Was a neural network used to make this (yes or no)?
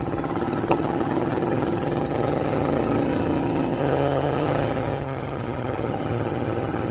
yes